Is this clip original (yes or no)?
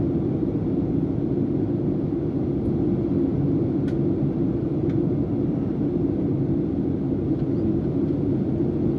yes